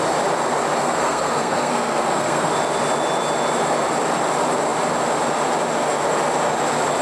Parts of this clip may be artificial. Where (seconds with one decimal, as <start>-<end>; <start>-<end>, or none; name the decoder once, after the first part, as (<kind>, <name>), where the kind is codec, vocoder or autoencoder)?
0.8-2.5 (codec, SNAC)